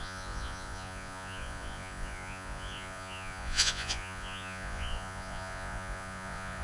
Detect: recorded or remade remade